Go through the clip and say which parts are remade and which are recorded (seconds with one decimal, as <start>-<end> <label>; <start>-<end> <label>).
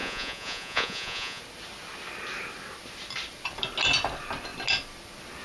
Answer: 0.0-1.4 remade; 1.4-5.4 recorded